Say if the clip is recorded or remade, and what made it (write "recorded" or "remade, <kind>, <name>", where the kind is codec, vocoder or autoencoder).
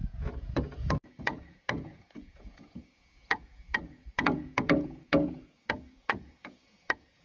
remade, vocoder, Vocos